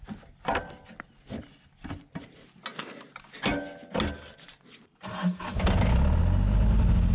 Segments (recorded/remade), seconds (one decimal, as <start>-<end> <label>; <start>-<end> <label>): 0.0-7.1 recorded